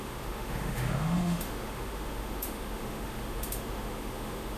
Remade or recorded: remade